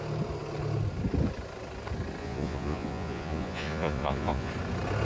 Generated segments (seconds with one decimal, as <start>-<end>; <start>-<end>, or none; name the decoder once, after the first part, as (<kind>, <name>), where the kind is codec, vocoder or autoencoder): 2.2-4.5 (vocoder, Vocos)